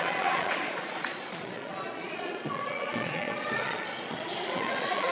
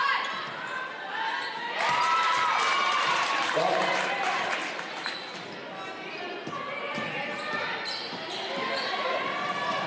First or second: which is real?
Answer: second